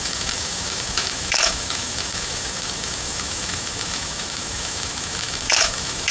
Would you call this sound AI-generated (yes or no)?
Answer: yes